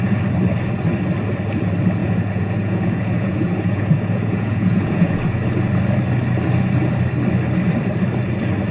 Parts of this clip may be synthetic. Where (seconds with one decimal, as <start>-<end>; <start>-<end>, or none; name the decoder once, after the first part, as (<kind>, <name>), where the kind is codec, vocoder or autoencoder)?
2.0-5.4 (vocoder, Vocos)